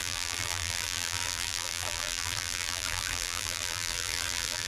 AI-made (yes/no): yes